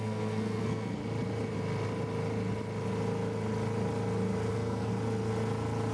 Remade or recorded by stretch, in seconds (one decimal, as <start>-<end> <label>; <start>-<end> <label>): 0.0-1.0 remade; 1.0-4.5 recorded; 4.5-4.9 remade; 4.9-5.9 recorded